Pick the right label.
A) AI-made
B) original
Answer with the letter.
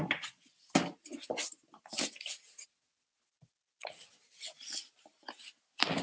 B